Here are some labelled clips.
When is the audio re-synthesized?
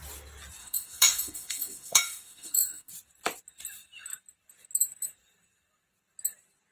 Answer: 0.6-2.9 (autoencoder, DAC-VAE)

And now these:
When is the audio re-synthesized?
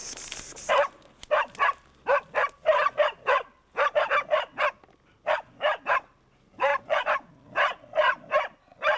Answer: 6.7-7.3 (vocoder, Vocos)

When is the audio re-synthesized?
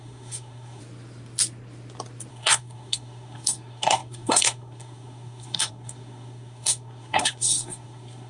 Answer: 0.0-0.8 (codec, SNAC); 2.3-8.3